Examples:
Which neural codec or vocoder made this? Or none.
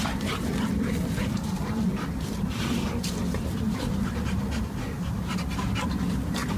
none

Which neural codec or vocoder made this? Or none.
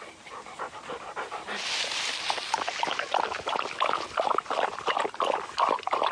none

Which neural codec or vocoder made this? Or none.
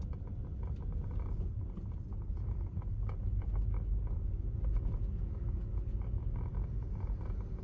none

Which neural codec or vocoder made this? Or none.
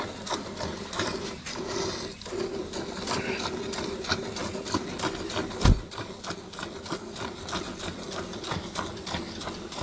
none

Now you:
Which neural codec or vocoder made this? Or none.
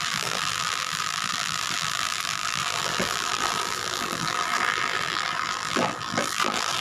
vocoder, BigVGAN v2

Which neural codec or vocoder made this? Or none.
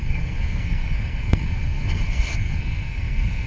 codec, SNAC